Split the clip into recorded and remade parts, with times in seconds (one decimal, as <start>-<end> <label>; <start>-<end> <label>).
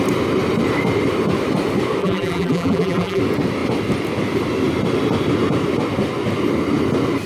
0.0-2.0 recorded; 2.0-3.2 remade; 3.2-7.3 recorded